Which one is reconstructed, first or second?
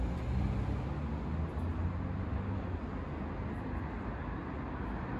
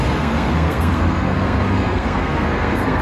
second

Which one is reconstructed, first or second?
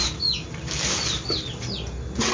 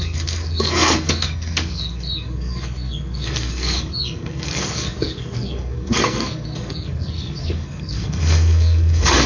second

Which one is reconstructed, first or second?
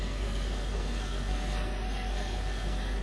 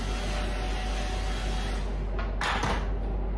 first